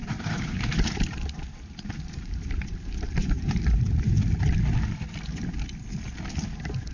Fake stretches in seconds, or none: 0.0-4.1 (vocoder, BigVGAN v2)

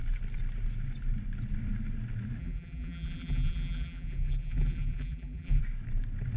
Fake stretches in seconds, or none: 2.4-5.6 (vocoder, BigVGAN v2)

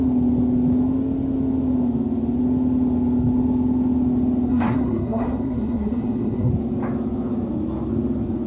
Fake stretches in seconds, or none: 4.5-6.5 (codec, SNAC)